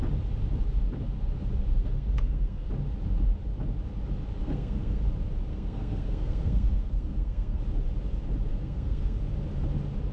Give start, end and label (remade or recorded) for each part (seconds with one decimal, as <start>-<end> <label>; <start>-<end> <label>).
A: 0.0-1.7 recorded; 1.7-2.7 remade; 2.7-4.4 recorded; 4.4-5.0 remade; 5.0-5.5 recorded; 5.5-7.6 remade; 7.6-8.5 recorded; 8.5-9.2 remade; 9.2-10.1 recorded